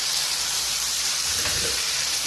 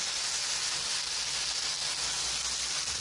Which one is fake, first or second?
first